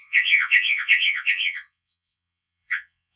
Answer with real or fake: fake